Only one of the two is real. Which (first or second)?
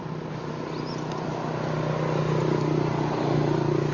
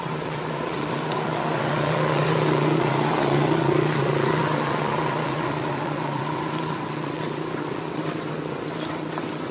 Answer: first